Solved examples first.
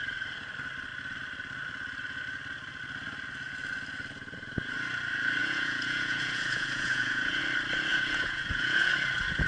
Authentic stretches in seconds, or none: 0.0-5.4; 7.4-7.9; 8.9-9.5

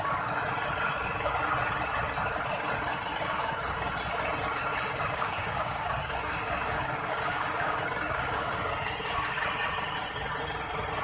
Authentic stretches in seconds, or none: 0.0-4.7; 8.7-11.0

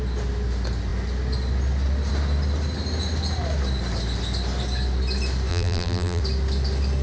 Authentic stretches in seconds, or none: 0.0-5.5; 6.2-7.0

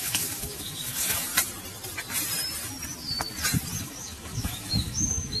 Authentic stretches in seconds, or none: 1.3-3.8

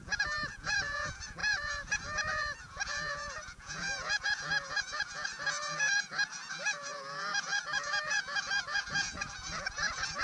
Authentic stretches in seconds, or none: none

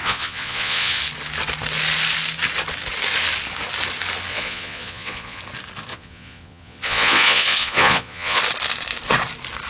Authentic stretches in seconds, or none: 1.0-4.3; 5.4-5.9; 8.4-9.7

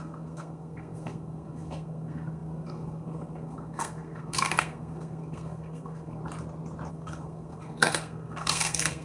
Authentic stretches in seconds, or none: 6.2-6.9